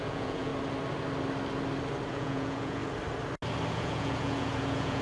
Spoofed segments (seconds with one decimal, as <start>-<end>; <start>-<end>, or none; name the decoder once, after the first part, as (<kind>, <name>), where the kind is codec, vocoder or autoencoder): 0.0-0.5 (vocoder, Vocos); 2.1-2.8; 3.7-5.0